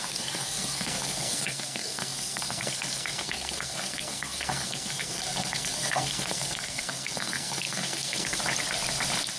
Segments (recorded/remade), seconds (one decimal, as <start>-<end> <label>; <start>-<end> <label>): 0.0-8.4 remade; 8.4-9.4 recorded

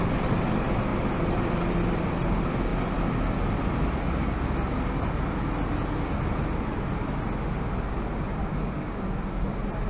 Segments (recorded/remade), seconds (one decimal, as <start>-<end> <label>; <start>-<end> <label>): 0.0-8.4 recorded; 8.4-9.5 remade; 9.5-9.9 recorded

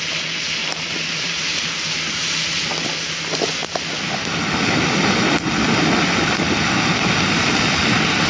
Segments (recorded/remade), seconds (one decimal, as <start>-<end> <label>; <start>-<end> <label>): 0.0-0.6 recorded; 0.6-1.7 remade; 1.7-8.3 recorded

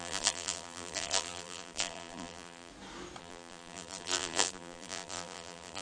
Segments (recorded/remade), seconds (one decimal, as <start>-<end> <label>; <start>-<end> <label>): 0.0-2.7 remade; 2.7-3.2 recorded; 3.2-5.8 remade

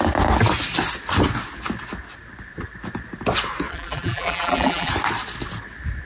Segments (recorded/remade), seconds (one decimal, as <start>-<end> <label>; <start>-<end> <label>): 0.0-3.7 recorded; 3.7-4.9 remade; 4.9-6.1 recorded

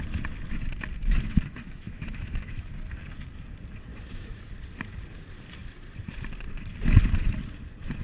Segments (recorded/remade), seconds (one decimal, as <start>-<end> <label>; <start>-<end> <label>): 0.0-1.0 recorded; 1.0-2.7 remade; 2.7-3.9 recorded; 3.9-4.5 remade; 4.5-8.0 recorded

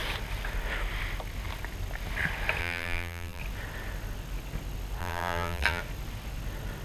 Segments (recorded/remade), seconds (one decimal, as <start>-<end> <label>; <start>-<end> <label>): 0.0-2.6 recorded; 2.6-3.4 remade; 3.4-5.0 recorded; 5.0-5.8 remade; 5.8-6.8 recorded